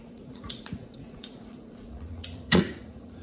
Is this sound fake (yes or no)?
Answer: yes